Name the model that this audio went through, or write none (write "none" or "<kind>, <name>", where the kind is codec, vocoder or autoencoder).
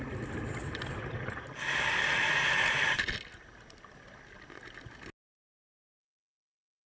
none